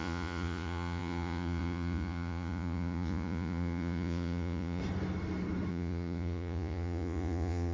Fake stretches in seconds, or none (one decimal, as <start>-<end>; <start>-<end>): 0.0-4.8; 5.7-7.7